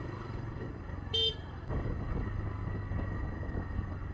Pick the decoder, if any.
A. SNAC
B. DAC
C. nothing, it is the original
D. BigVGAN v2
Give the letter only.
B